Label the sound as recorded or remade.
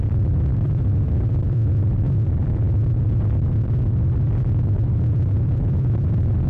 remade